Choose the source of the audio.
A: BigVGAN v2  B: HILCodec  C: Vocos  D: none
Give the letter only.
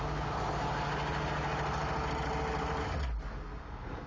D